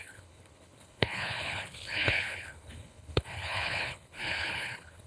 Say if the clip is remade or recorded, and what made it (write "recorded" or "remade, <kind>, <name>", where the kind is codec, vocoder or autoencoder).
remade, codec, HILCodec